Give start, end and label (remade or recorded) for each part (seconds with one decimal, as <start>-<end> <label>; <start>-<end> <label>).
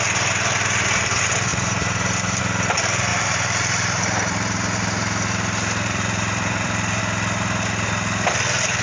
0.0-1.5 recorded; 1.5-2.4 remade; 2.4-3.1 recorded; 3.1-7.0 remade; 7.0-8.8 recorded